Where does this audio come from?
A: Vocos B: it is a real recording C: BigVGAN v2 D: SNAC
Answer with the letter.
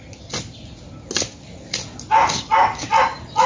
B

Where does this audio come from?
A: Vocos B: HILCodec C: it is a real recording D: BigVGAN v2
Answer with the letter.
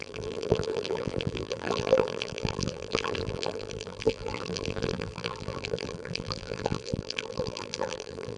D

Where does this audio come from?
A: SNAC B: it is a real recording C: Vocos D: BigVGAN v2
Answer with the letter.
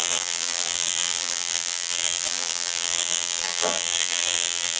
D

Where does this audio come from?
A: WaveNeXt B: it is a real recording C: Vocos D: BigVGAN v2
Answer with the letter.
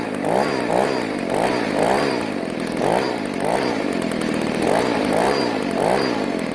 B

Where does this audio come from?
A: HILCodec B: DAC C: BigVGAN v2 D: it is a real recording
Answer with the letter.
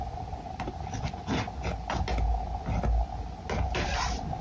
D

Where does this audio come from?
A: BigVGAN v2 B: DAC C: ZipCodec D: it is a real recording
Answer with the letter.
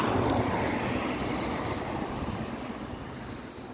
A